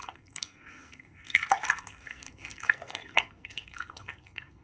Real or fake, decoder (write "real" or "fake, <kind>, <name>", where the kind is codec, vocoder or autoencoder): fake, codec, SNAC